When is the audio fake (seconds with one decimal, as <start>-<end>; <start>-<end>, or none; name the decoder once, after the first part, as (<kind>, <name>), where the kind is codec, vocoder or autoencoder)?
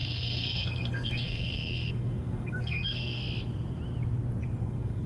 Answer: 0.0-3.2 (codec, SNAC); 4.6-5.1